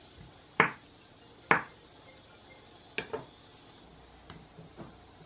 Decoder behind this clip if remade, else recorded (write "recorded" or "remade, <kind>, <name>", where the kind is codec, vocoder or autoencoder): recorded